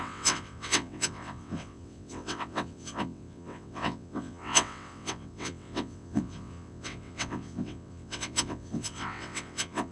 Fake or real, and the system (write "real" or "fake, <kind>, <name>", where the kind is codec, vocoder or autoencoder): fake, vocoder, WaveNeXt